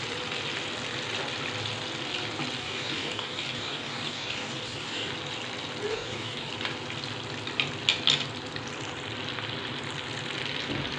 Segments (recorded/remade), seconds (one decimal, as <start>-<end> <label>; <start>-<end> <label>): 0.0-2.6 recorded; 2.6-5.1 remade; 5.1-5.9 recorded; 5.9-6.5 remade; 6.5-11.0 recorded